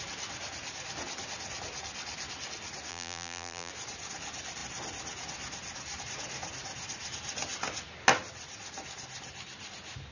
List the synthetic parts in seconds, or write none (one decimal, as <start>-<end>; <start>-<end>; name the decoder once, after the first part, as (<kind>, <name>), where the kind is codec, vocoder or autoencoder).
2.9-3.7 (vocoder, BigVGAN v2)